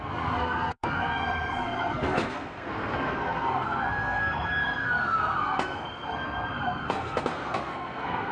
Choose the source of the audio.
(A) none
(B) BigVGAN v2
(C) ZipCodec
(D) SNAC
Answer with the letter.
D